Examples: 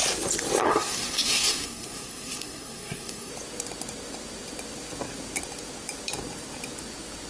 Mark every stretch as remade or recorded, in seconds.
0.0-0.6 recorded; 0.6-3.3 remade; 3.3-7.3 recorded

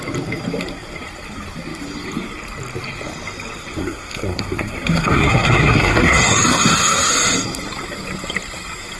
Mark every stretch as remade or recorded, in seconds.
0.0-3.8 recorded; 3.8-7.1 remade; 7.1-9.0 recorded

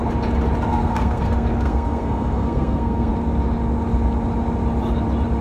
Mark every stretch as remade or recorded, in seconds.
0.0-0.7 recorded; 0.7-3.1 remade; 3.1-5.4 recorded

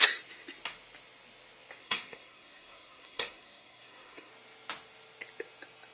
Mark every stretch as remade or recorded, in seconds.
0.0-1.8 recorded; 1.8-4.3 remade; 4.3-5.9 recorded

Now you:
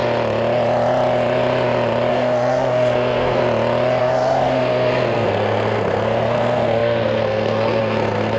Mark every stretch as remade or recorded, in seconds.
0.0-2.1 recorded; 2.1-3.4 remade; 3.4-4.0 recorded; 4.0-8.4 remade

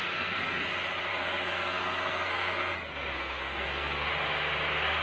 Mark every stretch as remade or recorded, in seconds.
0.0-0.6 remade; 0.6-1.1 recorded; 1.1-4.1 remade; 4.1-5.0 recorded

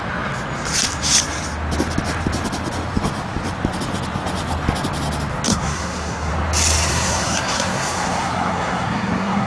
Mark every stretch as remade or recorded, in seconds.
0.0-5.5 recorded; 5.5-6.3 remade; 6.3-6.9 recorded; 6.9-9.5 remade

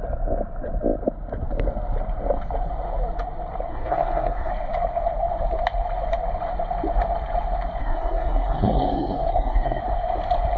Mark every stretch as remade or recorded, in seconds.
0.0-3.7 recorded; 3.7-4.5 remade; 4.5-7.8 recorded; 7.8-9.8 remade; 9.8-10.6 recorded